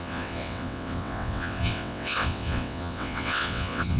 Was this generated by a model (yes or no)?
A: yes